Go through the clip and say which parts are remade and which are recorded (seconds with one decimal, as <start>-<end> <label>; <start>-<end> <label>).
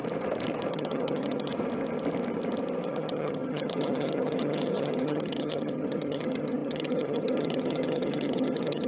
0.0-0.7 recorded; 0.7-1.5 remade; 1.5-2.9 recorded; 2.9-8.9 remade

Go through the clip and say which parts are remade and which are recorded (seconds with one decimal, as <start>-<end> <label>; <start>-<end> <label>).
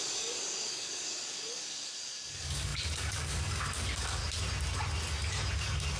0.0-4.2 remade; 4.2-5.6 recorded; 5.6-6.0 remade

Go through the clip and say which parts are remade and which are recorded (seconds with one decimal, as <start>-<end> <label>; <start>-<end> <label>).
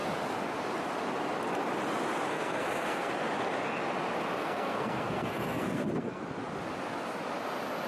0.0-2.3 recorded; 2.3-3.1 remade; 3.1-4.4 recorded; 4.4-6.2 remade; 6.2-7.9 recorded